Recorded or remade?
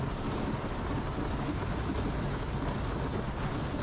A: recorded